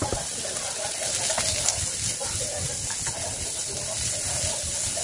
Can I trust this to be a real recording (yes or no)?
yes